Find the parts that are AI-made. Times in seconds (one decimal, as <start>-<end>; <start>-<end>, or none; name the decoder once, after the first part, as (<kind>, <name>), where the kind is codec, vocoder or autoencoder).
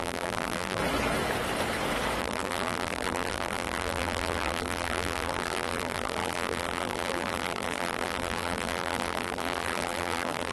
0.0-0.8 (vocoder, BigVGAN v2); 2.2-10.5